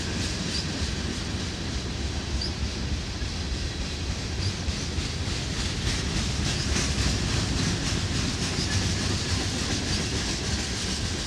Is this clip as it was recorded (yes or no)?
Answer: yes